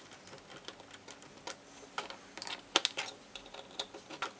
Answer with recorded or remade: recorded